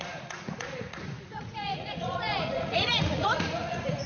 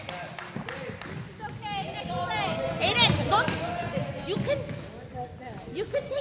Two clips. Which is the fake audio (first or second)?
first